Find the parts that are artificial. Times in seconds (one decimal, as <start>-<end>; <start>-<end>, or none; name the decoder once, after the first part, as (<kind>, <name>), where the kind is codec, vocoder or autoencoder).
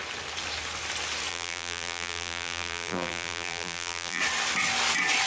1.3-4.2 (vocoder, BigVGAN v2)